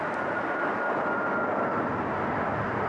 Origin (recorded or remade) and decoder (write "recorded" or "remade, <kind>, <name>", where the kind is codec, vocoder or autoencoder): recorded